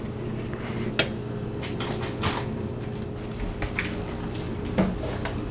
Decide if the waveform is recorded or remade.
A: recorded